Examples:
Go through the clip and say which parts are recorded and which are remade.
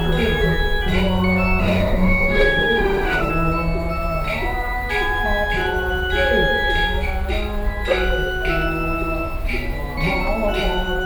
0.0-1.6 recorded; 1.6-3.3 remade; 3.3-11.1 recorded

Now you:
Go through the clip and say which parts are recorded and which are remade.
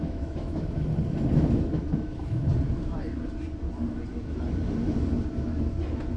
0.0-0.9 remade; 0.9-1.5 recorded; 1.5-2.5 remade; 2.5-6.2 recorded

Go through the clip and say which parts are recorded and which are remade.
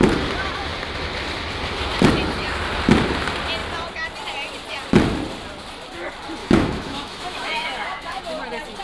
0.0-6.4 recorded; 6.4-8.2 remade; 8.2-8.8 recorded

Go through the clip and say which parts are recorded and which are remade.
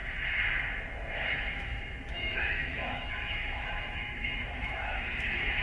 0.0-1.3 recorded; 1.3-5.6 remade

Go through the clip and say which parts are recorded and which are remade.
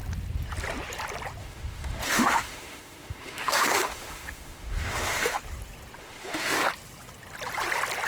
0.0-1.4 recorded; 1.4-5.4 remade; 5.4-6.0 recorded; 6.0-6.7 remade; 6.7-8.1 recorded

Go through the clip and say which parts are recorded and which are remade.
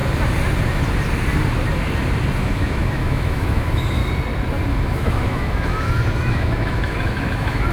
0.0-2.4 recorded; 2.4-4.0 remade; 4.0-4.7 recorded; 4.7-7.7 remade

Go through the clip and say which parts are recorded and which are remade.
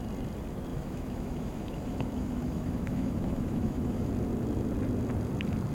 0.0-0.7 recorded; 0.7-4.1 remade; 4.1-5.7 recorded